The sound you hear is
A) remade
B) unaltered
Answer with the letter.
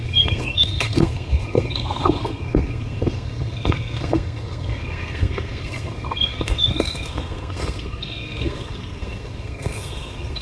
A